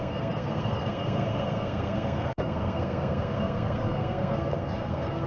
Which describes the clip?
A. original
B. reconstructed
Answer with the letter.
B